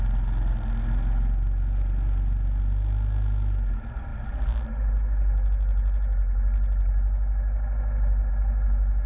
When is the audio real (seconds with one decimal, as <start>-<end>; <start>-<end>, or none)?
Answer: 0.0-9.1